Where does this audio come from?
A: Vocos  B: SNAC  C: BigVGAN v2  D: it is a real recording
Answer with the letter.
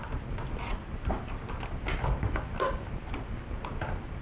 D